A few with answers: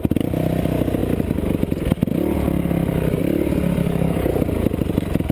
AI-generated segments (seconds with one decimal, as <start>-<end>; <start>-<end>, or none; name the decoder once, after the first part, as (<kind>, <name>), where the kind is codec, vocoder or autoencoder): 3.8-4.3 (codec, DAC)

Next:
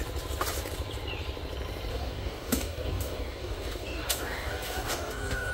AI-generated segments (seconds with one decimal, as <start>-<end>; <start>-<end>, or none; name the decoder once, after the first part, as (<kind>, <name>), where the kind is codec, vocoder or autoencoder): 1.9-5.5 (codec, DAC)

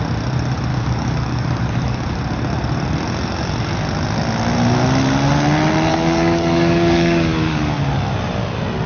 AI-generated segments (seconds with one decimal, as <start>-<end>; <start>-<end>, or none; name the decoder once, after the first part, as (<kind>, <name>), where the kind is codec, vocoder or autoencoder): 0.7-2.2 (codec, DAC); 5.9-7.8

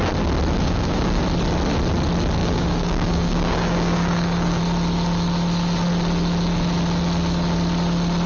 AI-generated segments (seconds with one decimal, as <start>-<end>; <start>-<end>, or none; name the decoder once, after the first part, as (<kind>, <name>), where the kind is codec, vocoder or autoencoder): 0.6-1.2 (codec, DAC); 2.4-4.6

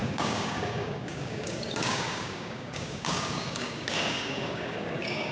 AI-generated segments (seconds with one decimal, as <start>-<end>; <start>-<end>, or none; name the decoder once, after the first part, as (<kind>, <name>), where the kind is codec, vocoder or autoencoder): 0.0-5.3 (codec, DAC)

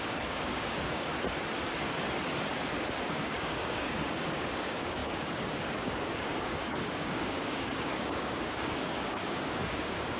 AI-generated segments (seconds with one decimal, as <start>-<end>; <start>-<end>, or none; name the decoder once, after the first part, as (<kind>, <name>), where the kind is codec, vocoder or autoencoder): 0.0-1.1 (codec, DAC); 3.0-10.2